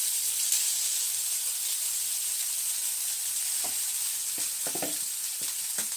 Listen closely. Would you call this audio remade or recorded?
recorded